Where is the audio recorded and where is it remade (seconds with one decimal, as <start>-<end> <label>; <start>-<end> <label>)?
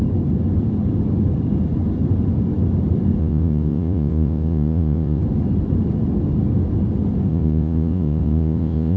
0.0-3.2 recorded; 3.2-5.2 remade; 5.2-7.3 recorded; 7.3-9.0 remade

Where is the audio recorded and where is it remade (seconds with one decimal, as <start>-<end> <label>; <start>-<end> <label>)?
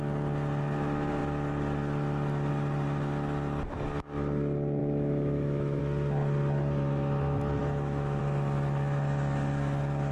0.0-4.8 recorded; 4.8-5.8 remade; 5.8-7.6 recorded; 7.6-8.2 remade; 8.2-10.1 recorded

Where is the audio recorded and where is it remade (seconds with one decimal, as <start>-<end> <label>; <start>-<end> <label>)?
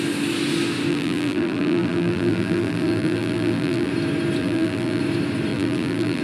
0.0-0.9 recorded; 0.9-3.9 remade; 3.9-4.4 recorded; 4.4-5.0 remade; 5.0-5.5 recorded; 5.5-6.2 remade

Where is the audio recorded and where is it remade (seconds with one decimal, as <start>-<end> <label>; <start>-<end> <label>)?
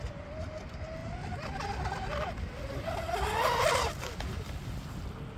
0.0-5.4 recorded